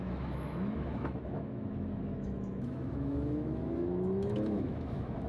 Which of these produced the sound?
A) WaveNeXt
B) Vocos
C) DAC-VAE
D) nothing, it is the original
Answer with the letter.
C